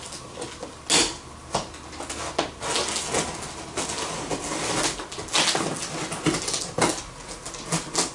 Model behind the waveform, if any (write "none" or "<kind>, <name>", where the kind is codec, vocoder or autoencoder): none